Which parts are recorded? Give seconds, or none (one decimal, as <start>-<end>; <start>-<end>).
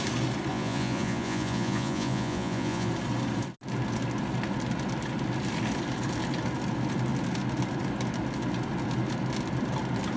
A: 0.0-0.5; 2.9-10.2